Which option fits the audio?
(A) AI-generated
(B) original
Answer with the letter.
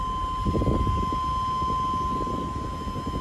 B